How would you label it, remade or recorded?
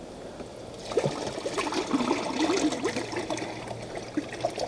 recorded